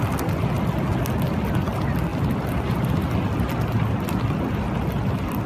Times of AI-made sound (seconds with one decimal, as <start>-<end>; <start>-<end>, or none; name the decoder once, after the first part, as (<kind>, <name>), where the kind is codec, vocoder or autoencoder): none